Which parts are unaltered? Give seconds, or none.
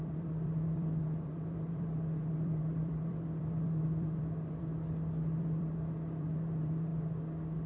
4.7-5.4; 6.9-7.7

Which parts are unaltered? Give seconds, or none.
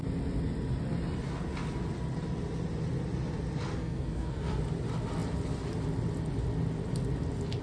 0.0-3.8; 4.6-7.6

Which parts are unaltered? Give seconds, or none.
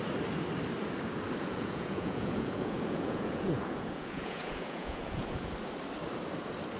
0.0-1.4; 5.5-6.8